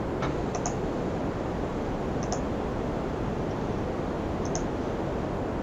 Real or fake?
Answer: real